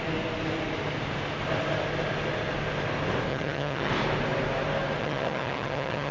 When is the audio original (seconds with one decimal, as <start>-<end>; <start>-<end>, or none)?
0.0-3.3; 3.9-5.0